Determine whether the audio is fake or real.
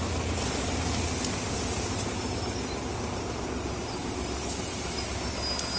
real